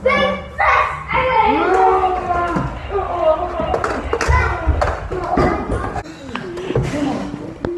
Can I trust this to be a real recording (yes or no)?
yes